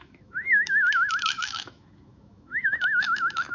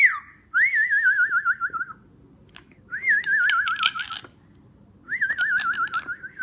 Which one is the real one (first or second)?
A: second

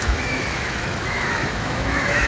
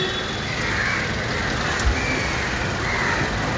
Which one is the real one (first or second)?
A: second